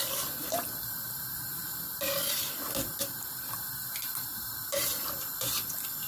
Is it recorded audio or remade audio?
remade